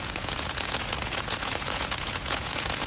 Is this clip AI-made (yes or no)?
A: yes